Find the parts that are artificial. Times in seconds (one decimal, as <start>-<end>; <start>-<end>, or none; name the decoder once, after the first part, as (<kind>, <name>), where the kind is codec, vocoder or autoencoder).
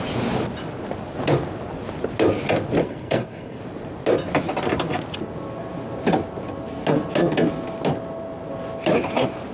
2.8-3.6 (codec, SNAC)